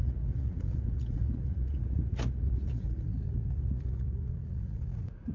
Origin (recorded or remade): remade